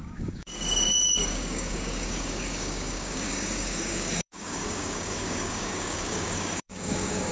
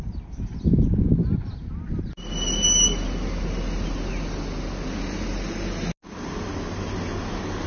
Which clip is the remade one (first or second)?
first